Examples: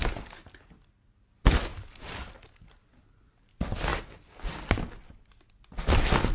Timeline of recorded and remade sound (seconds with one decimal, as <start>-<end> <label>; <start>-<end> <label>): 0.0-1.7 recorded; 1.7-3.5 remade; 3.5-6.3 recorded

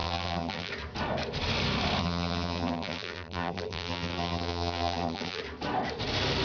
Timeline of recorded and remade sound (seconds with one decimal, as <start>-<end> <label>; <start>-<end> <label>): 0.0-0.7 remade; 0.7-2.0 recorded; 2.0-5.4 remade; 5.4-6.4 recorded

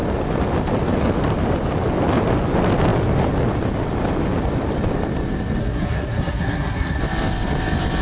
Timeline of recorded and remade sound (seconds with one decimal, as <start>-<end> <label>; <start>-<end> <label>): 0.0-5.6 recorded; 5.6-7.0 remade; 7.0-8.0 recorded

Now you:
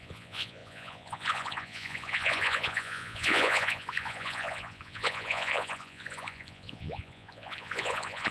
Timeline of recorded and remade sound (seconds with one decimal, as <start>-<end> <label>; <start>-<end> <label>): 0.0-8.3 remade

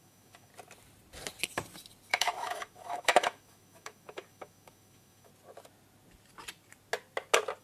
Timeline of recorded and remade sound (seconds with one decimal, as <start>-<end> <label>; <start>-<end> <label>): 0.0-0.5 remade; 0.5-2.1 recorded; 2.1-5.3 remade; 5.3-7.6 recorded